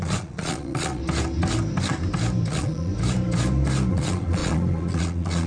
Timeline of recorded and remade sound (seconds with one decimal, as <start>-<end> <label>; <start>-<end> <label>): 0.0-1.0 remade; 1.0-2.5 recorded; 2.5-2.9 remade; 2.9-3.9 recorded; 3.9-5.5 remade